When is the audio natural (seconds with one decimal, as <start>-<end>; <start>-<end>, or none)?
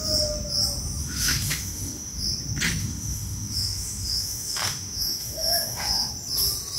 0.0-1.0; 2.2-2.8; 6.1-6.8